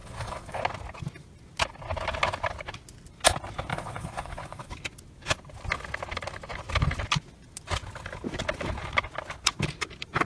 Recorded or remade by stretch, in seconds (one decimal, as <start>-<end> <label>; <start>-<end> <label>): 0.0-0.6 remade; 0.6-3.7 recorded; 3.7-4.7 remade; 4.7-10.3 recorded